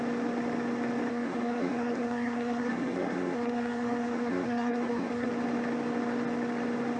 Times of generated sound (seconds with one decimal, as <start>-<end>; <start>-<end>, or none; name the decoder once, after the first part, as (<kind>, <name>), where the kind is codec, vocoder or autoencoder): 1.1-5.3 (codec, SNAC)